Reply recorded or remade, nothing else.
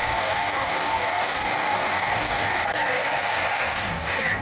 remade